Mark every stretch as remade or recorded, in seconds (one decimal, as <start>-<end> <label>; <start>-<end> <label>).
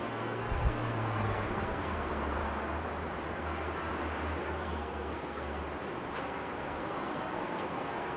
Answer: 0.0-2.4 remade; 2.4-3.3 recorded; 3.3-3.9 remade; 3.9-4.4 recorded; 4.4-5.6 remade; 5.6-6.2 recorded; 6.2-8.2 remade